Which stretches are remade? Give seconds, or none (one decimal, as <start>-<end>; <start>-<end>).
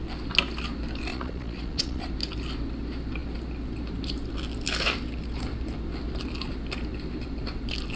1.1-2.1